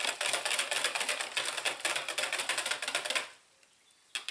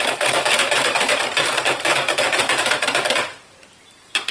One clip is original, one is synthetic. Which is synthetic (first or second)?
second